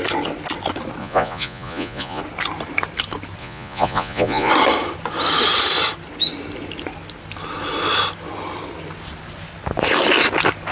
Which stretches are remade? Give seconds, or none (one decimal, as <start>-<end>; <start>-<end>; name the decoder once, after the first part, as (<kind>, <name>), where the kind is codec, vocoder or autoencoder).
1.0-2.2 (vocoder, Vocos); 3.4-4.5